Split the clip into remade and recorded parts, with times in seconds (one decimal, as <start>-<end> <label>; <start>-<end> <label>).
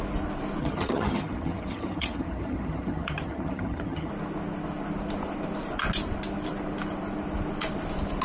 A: 0.0-0.6 recorded; 0.6-4.1 remade; 4.1-8.2 recorded